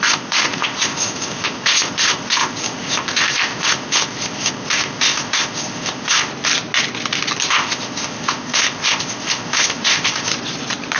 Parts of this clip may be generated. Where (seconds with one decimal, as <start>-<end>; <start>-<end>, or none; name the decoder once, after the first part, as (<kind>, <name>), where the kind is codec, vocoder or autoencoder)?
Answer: 0.0-6.3 (codec, ZipCodec); 7.5-10.3